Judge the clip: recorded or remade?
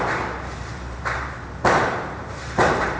remade